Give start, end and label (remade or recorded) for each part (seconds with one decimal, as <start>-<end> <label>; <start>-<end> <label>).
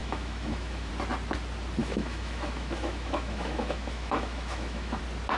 0.0-0.9 remade; 0.9-1.8 recorded; 1.8-5.0 remade; 5.0-5.4 recorded